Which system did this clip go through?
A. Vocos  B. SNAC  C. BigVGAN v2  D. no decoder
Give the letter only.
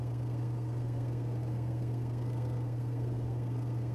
B